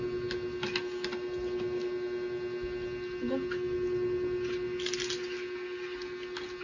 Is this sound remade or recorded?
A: recorded